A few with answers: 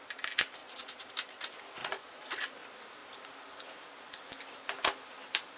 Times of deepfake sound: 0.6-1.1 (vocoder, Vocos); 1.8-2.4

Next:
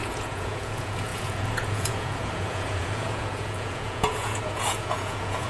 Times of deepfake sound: 0.0-5.5 (vocoder, Vocos)

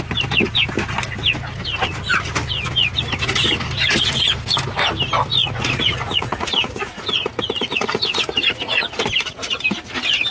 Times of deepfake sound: 5.4-8.9 (vocoder, Vocos)

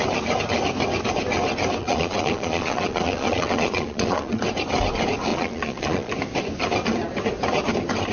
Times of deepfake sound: 1.8-4.4 (vocoder, Vocos); 5.3-6.1

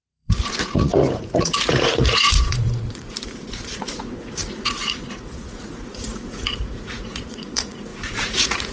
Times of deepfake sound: 0.0-8.7 (vocoder, Vocos)

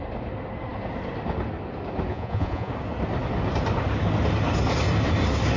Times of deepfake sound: 2.1-2.7 (vocoder, Vocos)